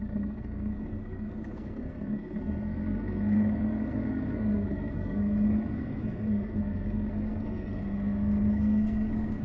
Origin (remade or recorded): remade